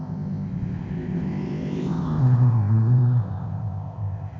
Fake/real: fake